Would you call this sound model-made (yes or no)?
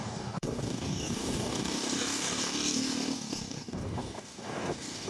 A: yes